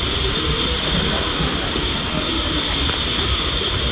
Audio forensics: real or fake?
real